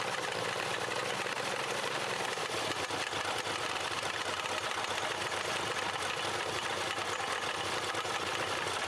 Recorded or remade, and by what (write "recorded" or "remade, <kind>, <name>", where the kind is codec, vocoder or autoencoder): recorded